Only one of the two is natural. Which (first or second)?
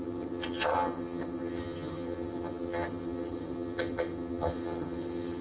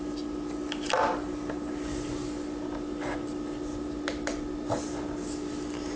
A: second